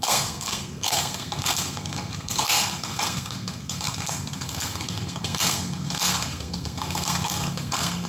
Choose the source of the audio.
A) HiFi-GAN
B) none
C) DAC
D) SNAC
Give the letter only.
D